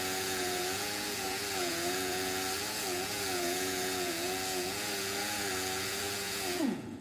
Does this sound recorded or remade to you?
remade